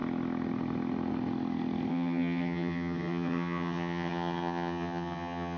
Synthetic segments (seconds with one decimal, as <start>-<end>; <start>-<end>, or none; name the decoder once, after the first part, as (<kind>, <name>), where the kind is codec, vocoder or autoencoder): 1.9-5.6 (vocoder, HiFi-GAN)